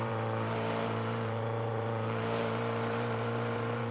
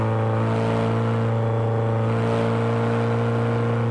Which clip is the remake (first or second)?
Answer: first